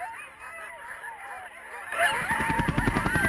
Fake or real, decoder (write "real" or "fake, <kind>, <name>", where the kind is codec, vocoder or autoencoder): real